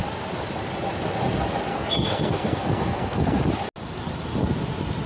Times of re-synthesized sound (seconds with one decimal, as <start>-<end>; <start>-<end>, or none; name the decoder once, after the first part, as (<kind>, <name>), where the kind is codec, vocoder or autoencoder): 1.7-3.4 (codec, SNAC)